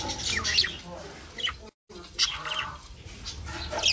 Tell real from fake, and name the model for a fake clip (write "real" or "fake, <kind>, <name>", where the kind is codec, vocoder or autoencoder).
real